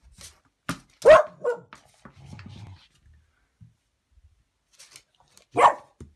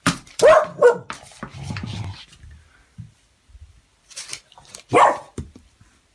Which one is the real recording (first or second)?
first